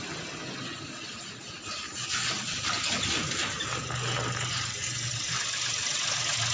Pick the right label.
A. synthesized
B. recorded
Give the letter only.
B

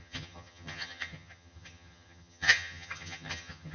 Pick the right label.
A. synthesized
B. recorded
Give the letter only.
A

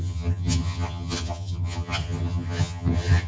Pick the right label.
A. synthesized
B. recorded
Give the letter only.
A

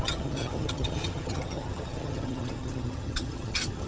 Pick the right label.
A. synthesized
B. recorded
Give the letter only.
A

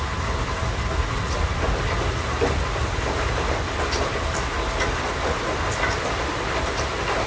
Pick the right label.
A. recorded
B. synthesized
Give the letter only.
A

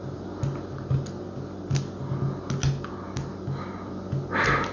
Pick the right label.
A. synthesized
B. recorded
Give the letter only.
B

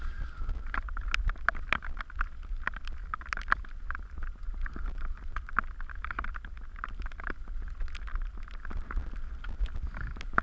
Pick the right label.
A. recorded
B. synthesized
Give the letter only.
A